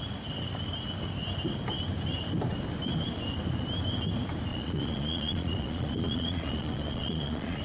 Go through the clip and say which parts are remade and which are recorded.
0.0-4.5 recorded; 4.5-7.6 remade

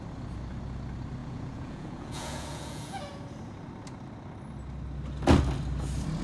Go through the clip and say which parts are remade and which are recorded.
0.0-1.2 recorded; 1.2-3.2 remade; 3.2-6.2 recorded

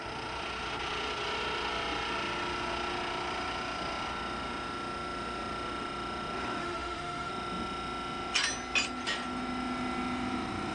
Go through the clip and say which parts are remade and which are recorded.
0.0-6.6 recorded; 6.6-7.3 remade; 7.3-10.7 recorded

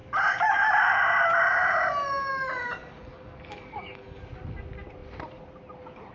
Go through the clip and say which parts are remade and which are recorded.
0.0-2.8 recorded; 2.8-4.2 remade; 4.2-6.1 recorded

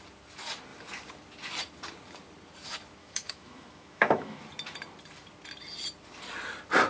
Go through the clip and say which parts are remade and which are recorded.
0.0-3.0 recorded; 3.0-4.4 remade; 4.4-6.9 recorded